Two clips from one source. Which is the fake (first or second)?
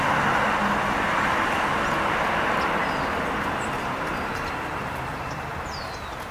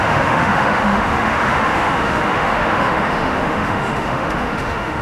second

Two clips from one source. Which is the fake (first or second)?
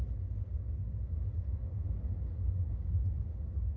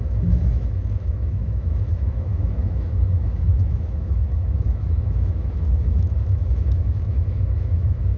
second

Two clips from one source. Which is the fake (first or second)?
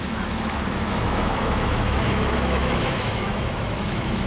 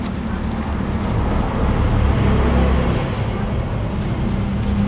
first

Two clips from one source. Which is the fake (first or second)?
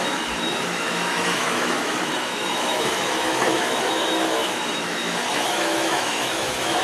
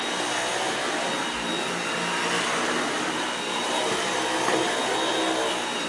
first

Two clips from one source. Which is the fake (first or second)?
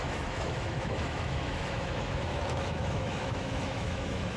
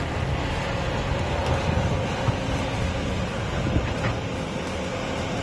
first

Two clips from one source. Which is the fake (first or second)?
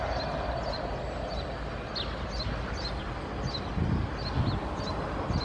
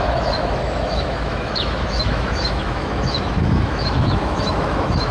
second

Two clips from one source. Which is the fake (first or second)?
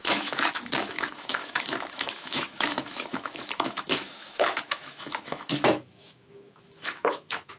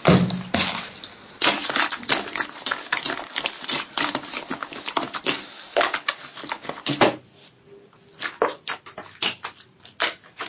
first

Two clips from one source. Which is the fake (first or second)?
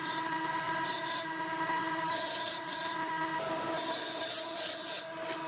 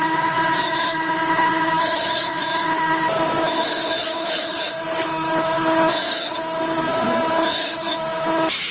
second